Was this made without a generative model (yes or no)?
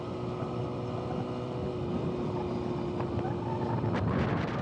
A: yes